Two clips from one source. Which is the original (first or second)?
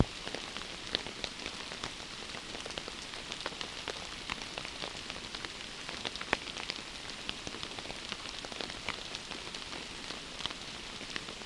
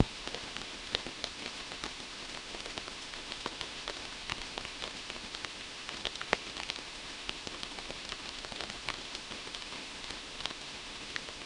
first